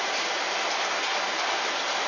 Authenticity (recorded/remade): recorded